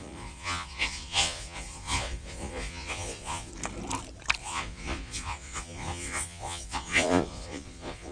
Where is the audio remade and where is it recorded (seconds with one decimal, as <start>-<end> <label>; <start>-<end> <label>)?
0.0-3.5 remade; 3.5-4.4 recorded; 4.4-8.1 remade